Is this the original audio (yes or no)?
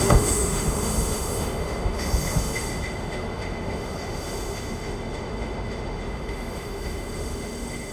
no